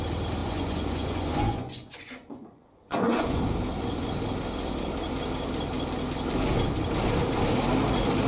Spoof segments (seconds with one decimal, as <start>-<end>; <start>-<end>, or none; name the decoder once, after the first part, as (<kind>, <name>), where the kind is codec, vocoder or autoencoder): 0.4-3.4 (vocoder, Vocos)